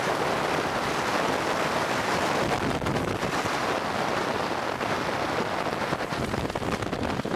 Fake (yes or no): yes